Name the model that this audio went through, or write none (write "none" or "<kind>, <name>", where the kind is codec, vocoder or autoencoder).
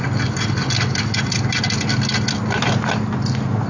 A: none